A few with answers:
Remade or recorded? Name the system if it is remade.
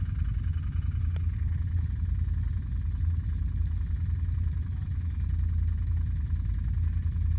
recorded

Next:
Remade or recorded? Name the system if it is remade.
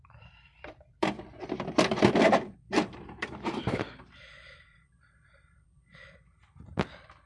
remade, vocoder, BigVGAN v2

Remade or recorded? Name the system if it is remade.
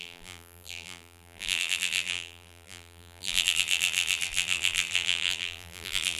remade, vocoder, BigVGAN v2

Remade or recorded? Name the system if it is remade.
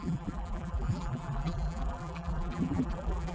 remade, vocoder, BigVGAN v2